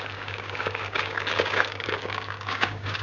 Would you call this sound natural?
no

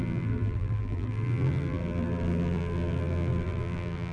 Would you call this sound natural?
no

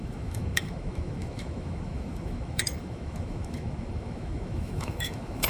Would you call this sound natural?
no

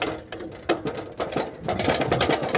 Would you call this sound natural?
yes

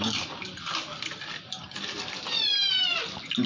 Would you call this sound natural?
yes